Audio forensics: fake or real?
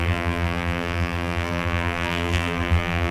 fake